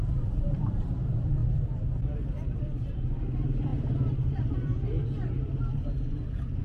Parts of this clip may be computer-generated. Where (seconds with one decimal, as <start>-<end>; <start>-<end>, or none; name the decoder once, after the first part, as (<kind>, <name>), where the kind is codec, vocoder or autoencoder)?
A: 0.0-1.4 (vocoder, BigVGAN v2); 2.3-6.6